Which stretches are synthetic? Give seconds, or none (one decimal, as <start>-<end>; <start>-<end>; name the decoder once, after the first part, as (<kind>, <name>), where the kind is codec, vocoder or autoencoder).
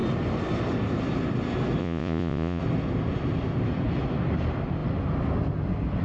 1.8-2.6 (vocoder, Vocos)